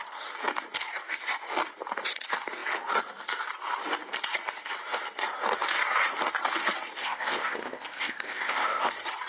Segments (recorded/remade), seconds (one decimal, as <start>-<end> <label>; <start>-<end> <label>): 0.0-7.0 recorded; 7.0-8.9 remade; 8.9-9.3 recorded